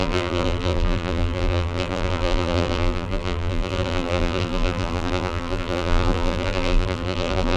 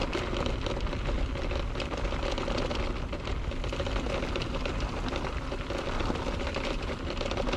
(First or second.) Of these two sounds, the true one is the second